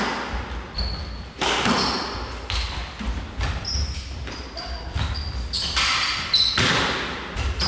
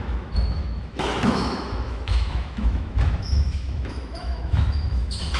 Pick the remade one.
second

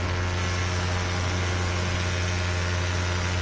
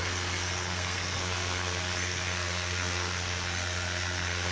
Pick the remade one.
second